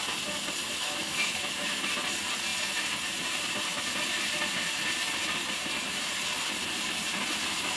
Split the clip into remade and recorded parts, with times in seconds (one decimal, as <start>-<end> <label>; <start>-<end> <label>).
0.0-0.6 recorded; 0.6-1.9 remade; 1.9-7.8 recorded